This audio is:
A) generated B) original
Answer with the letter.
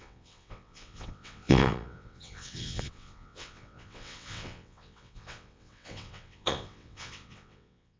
A